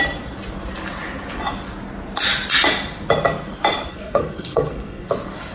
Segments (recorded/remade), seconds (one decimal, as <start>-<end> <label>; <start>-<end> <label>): 0.0-3.9 recorded; 3.9-5.1 remade; 5.1-5.5 recorded